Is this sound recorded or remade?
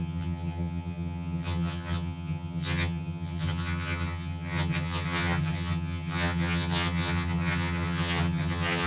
remade